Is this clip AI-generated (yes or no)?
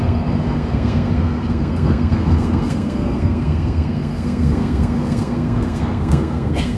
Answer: yes